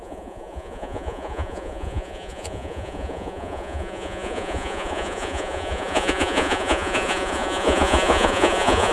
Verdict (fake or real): fake